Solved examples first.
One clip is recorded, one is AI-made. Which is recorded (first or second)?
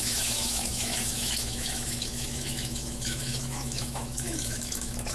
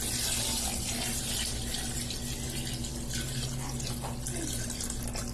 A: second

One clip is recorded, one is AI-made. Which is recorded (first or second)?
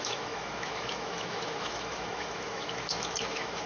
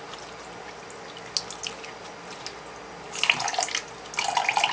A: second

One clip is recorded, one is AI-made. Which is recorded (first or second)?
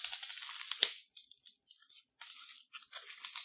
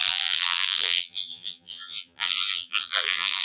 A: first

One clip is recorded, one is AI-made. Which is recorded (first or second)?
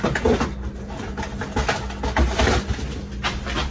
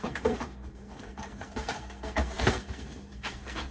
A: first